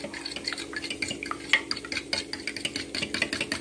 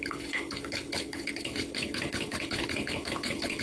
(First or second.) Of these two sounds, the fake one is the second